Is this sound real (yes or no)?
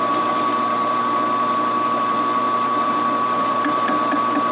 no